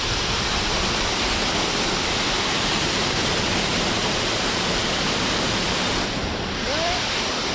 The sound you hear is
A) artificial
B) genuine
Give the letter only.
A